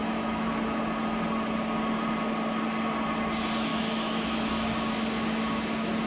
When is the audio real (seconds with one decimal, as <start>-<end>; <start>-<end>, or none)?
0.5-3.7; 4.5-6.1